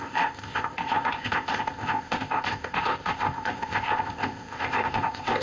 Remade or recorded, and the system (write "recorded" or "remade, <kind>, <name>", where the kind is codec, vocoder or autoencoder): remade, codec, ZipCodec